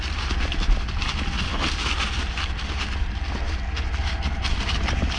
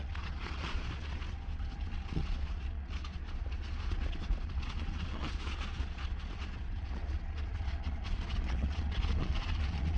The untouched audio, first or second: first